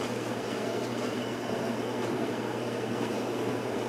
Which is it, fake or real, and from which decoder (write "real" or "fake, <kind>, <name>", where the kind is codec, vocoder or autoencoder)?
fake, codec, SNAC